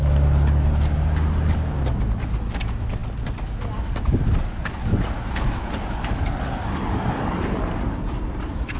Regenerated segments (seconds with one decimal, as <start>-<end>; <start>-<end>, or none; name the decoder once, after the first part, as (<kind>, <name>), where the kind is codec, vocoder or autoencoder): none